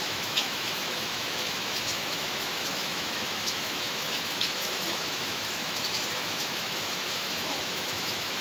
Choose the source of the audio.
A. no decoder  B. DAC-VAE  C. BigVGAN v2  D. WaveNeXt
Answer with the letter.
B